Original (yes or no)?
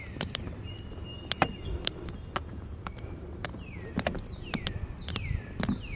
yes